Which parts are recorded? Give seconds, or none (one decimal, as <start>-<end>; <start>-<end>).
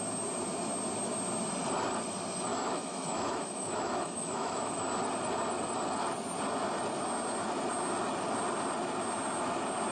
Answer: 0.0-2.5; 4.7-9.9